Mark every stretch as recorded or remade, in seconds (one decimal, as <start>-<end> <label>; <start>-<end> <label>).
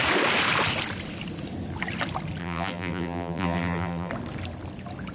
0.0-2.4 recorded; 2.4-4.1 remade; 4.1-5.1 recorded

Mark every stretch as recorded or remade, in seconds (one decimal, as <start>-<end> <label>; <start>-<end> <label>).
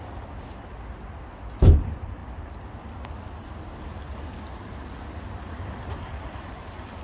0.0-7.0 recorded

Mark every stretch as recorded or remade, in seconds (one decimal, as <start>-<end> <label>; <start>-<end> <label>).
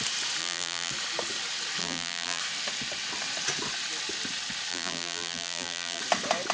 0.0-0.4 recorded; 0.4-0.9 remade; 0.9-1.8 recorded; 1.8-2.4 remade; 2.4-4.7 recorded; 4.7-6.0 remade; 6.0-6.5 recorded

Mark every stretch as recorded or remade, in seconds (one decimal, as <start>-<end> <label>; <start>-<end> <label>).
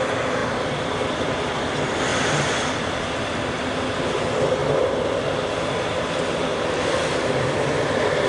0.0-0.4 recorded; 0.4-0.9 remade; 0.9-2.1 recorded; 2.1-3.7 remade; 3.7-4.6 recorded; 4.6-5.2 remade; 5.2-8.3 recorded